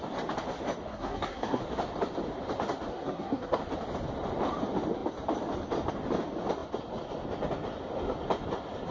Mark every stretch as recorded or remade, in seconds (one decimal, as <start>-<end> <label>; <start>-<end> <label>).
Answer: 0.0-0.9 recorded; 0.9-1.6 remade; 1.6-2.9 recorded; 2.9-3.6 remade; 3.6-8.9 recorded